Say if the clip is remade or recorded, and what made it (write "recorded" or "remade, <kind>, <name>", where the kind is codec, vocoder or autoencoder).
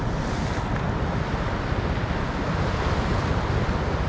recorded